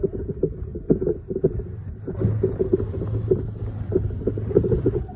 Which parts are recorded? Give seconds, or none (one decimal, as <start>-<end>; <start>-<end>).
0.0-5.2